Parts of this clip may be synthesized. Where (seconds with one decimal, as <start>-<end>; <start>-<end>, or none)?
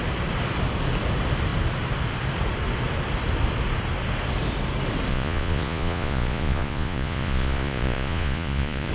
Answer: 5.1-8.9